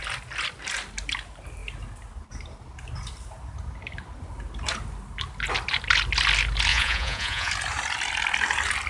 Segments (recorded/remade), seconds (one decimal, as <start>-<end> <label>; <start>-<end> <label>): 0.0-6.7 recorded; 6.7-7.5 remade; 7.5-8.9 recorded